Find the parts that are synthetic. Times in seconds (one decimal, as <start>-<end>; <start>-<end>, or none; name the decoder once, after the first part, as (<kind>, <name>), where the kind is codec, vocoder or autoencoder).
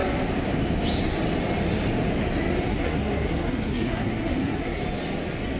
2.7-4.8 (codec, SNAC)